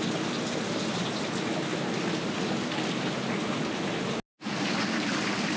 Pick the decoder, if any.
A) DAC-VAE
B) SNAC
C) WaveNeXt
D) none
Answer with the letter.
D